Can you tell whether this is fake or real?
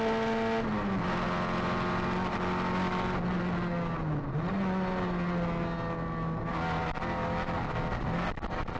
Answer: real